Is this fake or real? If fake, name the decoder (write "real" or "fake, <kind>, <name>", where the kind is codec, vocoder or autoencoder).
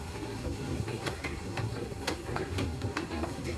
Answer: fake, codec, SNAC